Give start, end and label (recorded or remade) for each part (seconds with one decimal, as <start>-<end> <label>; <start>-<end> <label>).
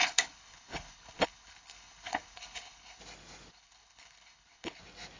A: 0.0-3.0 remade; 3.0-3.5 recorded; 3.5-4.8 remade; 4.8-5.2 recorded